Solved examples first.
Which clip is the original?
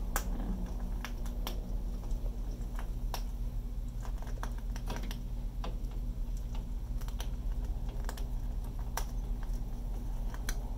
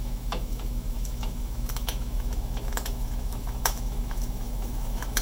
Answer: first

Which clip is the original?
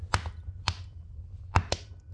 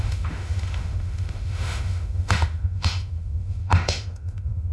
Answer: first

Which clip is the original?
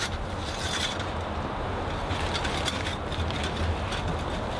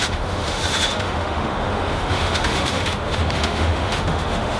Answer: first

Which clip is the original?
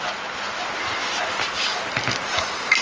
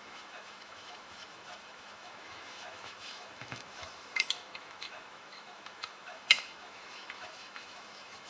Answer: first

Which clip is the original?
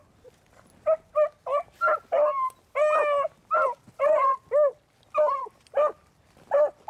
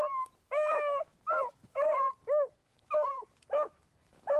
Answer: first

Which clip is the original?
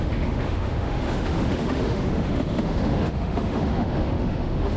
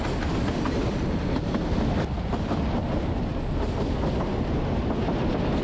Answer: second